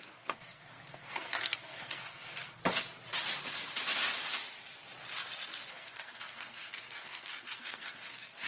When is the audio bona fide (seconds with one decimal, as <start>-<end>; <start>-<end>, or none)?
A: 2.6-5.7